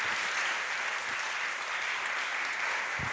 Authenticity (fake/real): real